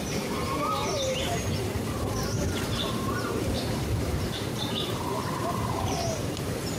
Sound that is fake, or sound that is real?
fake